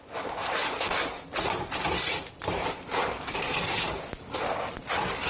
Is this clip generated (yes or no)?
no